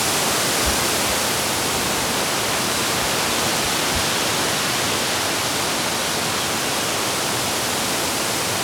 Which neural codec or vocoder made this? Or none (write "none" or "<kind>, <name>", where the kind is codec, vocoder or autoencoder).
none